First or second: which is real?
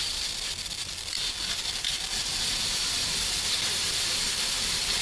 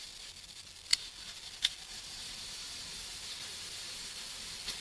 second